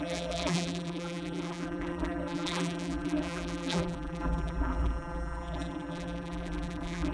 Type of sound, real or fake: fake